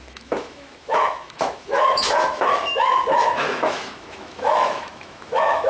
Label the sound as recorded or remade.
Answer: remade